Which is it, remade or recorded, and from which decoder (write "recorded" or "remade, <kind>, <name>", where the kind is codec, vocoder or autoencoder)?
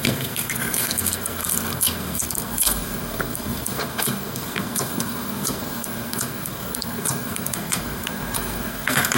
remade, codec, SNAC